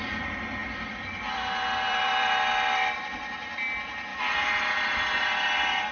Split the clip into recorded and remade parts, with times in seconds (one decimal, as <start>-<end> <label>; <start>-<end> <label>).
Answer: 0.0-0.6 recorded; 0.6-3.0 remade; 3.0-4.1 recorded; 4.1-5.2 remade; 5.2-5.9 recorded